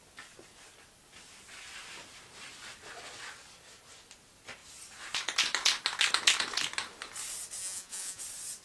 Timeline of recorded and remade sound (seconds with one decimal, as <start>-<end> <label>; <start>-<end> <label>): 0.0-7.6 recorded; 7.6-8.2 remade; 8.2-8.6 recorded